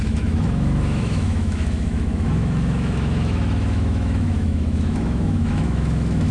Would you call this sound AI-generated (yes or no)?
yes